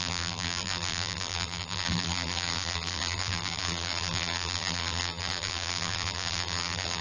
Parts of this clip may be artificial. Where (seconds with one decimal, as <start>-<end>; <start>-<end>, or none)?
0.0-7.0